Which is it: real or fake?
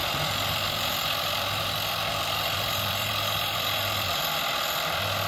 fake